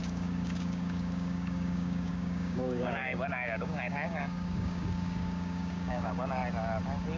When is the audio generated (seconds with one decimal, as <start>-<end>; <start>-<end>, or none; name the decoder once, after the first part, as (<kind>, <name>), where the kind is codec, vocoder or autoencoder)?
0.0-6.4 (codec, DAC)